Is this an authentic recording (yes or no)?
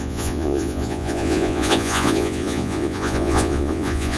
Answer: no